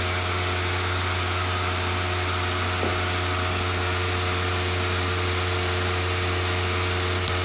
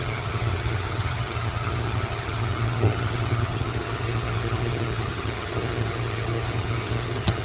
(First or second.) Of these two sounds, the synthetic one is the second